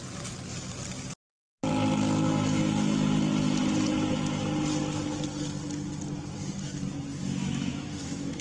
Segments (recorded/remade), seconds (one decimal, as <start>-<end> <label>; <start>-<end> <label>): 0.0-7.1 recorded; 7.1-8.4 remade